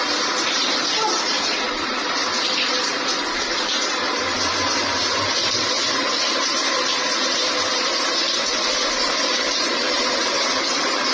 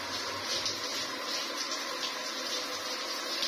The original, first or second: second